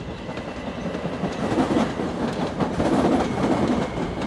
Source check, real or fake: real